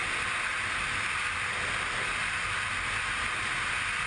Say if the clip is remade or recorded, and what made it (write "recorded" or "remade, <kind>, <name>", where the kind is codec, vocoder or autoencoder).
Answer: recorded